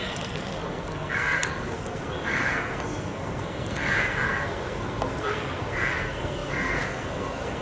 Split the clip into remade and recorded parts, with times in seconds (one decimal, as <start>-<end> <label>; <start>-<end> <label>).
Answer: 0.0-7.6 remade